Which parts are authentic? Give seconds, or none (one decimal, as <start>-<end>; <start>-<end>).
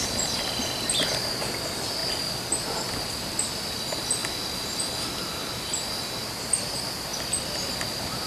0.0-8.3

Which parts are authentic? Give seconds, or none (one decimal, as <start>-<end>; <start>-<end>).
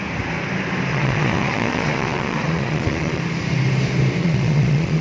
0.0-0.9; 3.2-4.2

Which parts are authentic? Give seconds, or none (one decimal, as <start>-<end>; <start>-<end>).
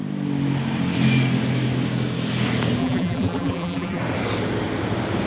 0.0-2.8; 4.0-5.3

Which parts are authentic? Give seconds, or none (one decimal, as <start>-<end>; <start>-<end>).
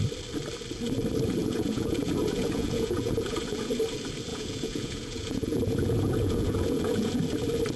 0.0-1.4; 3.7-4.3; 7.2-7.8